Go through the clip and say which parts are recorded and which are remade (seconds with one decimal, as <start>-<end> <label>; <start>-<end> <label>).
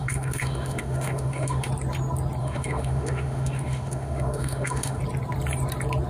0.0-1.7 remade; 1.7-2.4 recorded; 2.4-5.0 remade; 5.0-6.1 recorded